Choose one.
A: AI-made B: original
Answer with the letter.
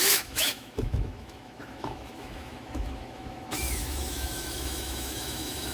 A